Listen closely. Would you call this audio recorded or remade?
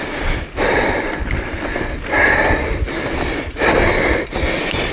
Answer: recorded